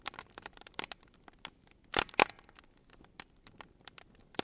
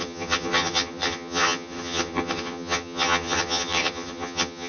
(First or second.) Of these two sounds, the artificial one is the second